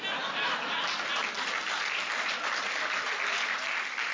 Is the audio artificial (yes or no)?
no